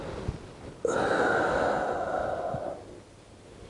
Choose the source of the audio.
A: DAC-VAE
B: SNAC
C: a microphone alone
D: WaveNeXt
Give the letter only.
C